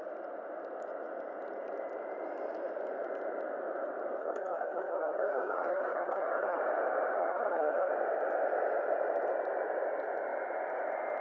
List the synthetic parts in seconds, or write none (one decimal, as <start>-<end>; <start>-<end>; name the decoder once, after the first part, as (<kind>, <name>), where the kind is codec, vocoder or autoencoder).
4.2-6.6 (codec, SNAC); 7.1-7.9